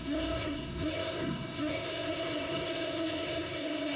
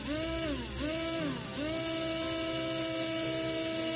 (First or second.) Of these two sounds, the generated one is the first